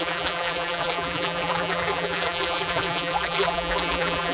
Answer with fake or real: fake